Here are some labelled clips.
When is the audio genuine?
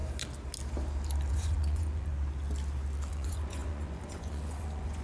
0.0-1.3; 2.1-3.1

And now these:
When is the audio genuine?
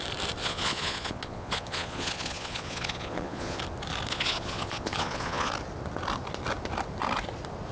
0.0-0.4; 3.6-4.1; 5.5-7.7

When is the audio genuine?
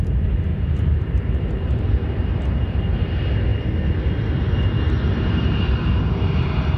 0.0-0.5; 3.1-6.8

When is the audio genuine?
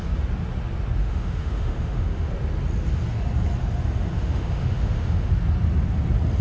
0.0-1.0; 2.3-4.2; 5.3-6.4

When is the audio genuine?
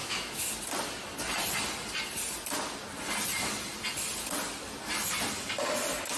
0.5-6.2